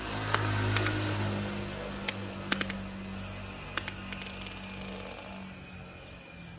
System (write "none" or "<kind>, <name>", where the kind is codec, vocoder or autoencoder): none